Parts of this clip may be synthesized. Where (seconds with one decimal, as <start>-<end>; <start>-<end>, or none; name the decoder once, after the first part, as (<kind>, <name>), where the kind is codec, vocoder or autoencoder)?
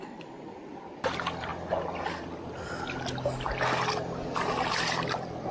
0.0-1.5 (vocoder, BigVGAN v2); 4.7-5.5